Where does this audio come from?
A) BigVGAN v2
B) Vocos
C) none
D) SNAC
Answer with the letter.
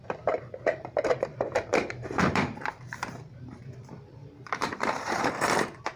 A